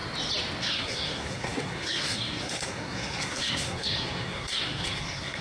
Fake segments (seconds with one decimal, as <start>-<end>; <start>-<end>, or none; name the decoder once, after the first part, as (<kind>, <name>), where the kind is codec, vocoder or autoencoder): 0.6-5.4 (codec, SNAC)